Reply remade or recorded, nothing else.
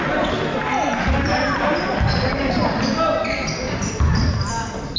recorded